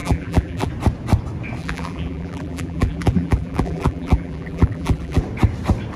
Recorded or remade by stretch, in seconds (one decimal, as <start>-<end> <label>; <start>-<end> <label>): 0.0-0.7 remade; 0.7-1.6 recorded; 1.6-5.2 remade; 5.2-6.0 recorded